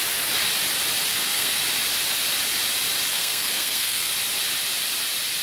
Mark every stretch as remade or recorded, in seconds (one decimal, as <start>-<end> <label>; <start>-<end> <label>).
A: 0.0-1.1 recorded; 1.1-1.6 remade; 1.6-3.1 recorded; 3.1-4.1 remade; 4.1-5.4 recorded